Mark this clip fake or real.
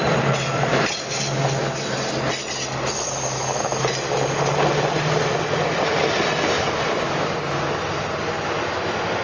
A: real